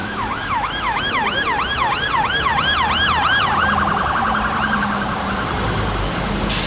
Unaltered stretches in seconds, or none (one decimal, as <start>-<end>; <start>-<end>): 1.0-6.7